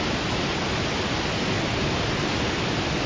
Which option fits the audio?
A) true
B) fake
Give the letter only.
A